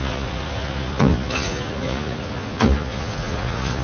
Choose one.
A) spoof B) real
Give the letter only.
A